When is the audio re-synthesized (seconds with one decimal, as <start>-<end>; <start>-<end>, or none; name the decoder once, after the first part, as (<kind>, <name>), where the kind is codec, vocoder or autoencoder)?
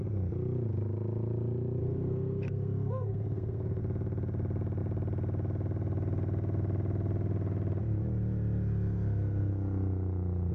1.8-3.8 (codec, SNAC)